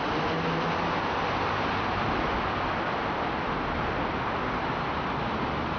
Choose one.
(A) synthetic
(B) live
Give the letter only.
B